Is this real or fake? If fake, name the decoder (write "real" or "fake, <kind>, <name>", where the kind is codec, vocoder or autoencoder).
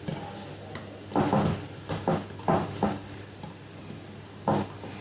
real